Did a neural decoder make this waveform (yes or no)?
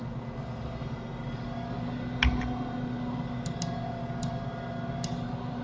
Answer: no